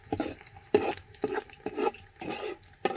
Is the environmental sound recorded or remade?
recorded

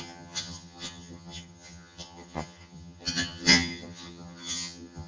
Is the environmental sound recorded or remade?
remade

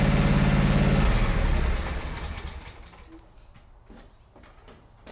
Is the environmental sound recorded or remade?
recorded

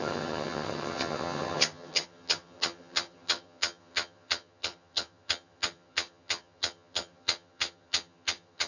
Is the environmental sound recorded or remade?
remade